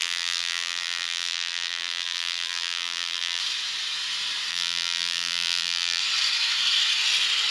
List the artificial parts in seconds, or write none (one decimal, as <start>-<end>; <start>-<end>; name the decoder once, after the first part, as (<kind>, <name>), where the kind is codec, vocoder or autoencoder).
0.0-3.4 (vocoder, BigVGAN v2); 4.5-6.0